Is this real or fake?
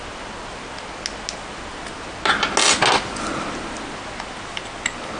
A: real